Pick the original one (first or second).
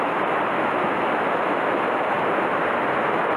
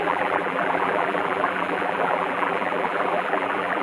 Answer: first